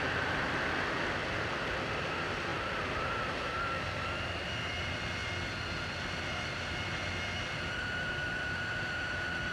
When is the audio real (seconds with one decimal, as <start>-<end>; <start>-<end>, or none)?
0.0-9.5

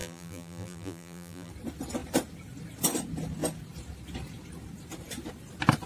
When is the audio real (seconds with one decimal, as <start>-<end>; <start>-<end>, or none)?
1.5-5.9

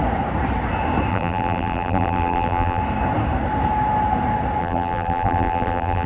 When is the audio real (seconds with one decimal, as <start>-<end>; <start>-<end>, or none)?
0.0-1.1; 2.8-4.6

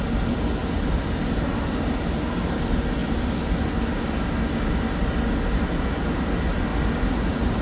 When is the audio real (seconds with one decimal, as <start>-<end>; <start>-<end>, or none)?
0.0-0.6; 2.6-6.7

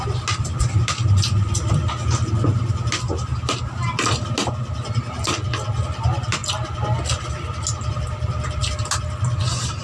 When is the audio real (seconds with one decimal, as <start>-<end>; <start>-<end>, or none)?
0.0-9.8